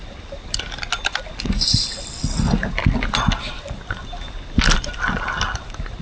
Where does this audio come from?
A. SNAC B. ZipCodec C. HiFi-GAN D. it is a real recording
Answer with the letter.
D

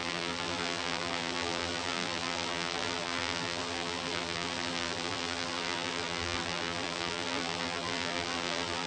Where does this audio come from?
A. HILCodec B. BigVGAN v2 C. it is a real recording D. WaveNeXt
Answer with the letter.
B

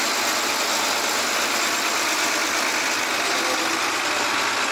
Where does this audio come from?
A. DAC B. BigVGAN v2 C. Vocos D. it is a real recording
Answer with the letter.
D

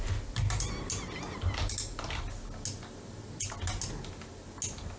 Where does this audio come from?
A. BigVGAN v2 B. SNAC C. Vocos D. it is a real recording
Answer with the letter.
D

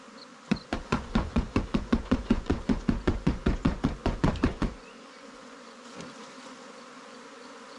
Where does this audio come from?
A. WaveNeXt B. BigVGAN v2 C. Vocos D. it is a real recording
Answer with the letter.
C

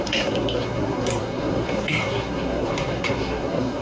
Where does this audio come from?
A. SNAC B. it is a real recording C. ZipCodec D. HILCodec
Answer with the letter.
A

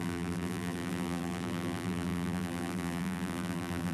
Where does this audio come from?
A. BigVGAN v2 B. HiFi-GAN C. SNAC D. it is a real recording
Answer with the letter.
A